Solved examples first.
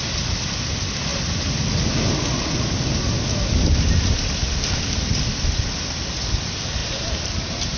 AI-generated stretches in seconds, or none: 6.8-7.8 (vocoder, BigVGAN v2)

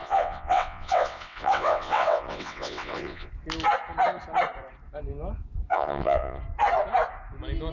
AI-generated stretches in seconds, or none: 0.0-3.3 (vocoder, WaveNeXt); 5.7-6.4

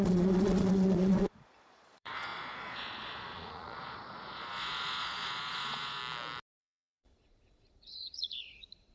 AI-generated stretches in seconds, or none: 0.0-6.0 (vocoder, Vocos); 6.6-8.9